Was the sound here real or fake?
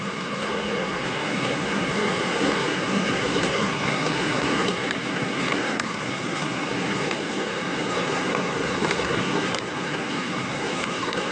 fake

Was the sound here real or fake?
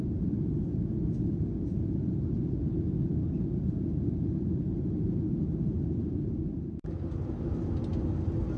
real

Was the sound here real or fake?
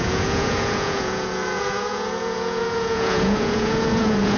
fake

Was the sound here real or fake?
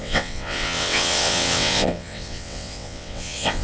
fake